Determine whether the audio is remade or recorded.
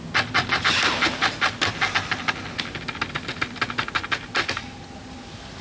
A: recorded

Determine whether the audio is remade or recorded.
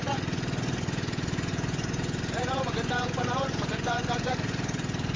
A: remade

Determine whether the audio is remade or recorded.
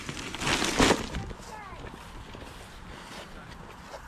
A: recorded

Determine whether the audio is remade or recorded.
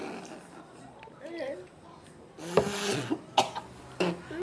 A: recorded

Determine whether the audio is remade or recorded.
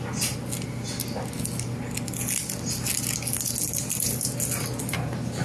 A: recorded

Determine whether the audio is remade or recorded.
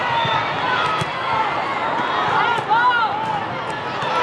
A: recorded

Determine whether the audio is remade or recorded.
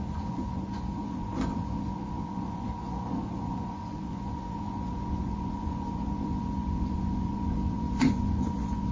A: remade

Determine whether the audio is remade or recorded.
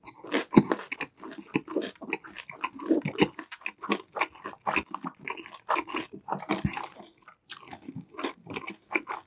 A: recorded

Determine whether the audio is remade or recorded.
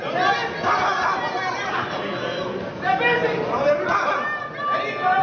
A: recorded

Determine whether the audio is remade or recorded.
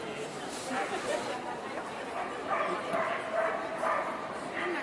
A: recorded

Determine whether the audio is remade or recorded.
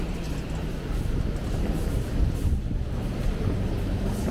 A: recorded